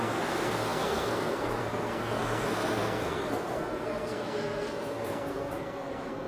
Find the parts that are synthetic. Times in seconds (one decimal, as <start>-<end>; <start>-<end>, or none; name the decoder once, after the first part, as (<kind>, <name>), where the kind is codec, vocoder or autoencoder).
0.0-6.3 (codec, SNAC)